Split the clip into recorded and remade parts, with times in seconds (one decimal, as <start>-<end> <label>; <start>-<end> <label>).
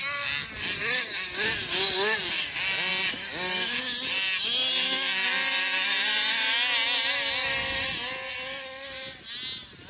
0.0-9.9 recorded